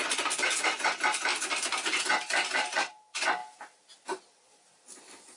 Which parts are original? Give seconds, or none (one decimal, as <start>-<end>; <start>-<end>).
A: 0.0-1.3; 2.0-3.4; 4.2-5.4